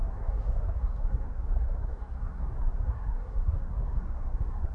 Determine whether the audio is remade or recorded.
remade